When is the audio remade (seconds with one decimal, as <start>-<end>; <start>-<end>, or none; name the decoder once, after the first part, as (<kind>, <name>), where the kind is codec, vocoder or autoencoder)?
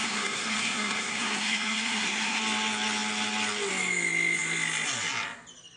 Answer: 0.0-2.4 (codec, SNAC)